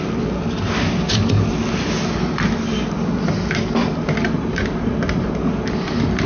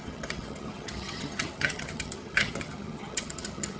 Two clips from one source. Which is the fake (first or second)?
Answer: second